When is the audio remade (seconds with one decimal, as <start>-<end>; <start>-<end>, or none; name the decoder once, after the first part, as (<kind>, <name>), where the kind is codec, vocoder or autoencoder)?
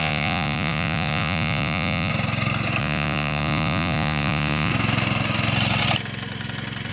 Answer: 0.0-2.1 (vocoder, Vocos); 2.8-4.7